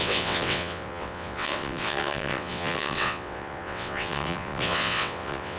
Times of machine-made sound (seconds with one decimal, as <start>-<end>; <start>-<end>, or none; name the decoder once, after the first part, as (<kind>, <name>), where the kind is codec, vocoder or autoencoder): 0.0-5.6 (vocoder, WaveNeXt)